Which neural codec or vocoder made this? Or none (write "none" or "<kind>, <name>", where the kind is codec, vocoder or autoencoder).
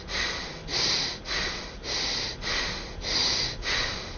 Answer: none